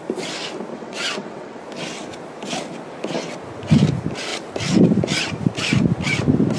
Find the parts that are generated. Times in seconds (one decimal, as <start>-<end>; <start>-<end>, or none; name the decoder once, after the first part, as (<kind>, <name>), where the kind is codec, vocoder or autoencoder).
0.7-1.6 (vocoder, WaveNeXt)